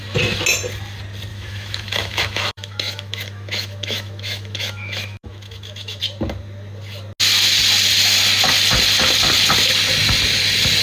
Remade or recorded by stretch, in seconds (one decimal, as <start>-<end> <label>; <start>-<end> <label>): 0.0-1.3 recorded; 1.3-6.0 remade; 6.0-10.8 recorded